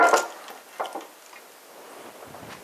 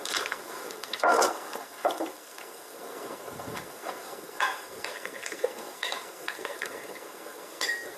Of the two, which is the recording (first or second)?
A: first